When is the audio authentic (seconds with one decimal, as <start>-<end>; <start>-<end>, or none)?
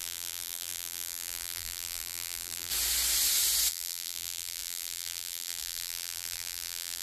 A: 2.7-3.7